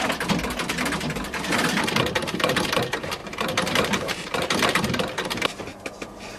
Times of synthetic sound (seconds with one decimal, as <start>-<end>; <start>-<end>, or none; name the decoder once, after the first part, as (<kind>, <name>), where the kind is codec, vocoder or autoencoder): 2.2-2.8 (vocoder, BigVGAN v2); 3.2-4.6